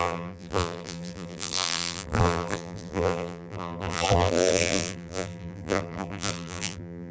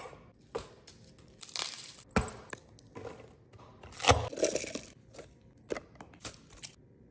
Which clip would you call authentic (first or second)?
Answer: second